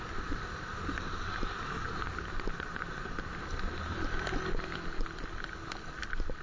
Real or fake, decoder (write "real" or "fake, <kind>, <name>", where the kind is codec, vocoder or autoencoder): real